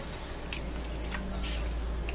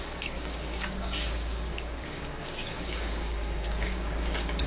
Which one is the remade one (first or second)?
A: second